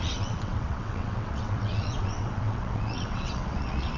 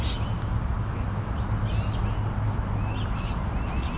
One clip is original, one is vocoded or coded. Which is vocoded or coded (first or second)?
first